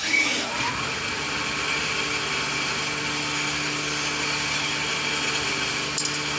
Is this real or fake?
real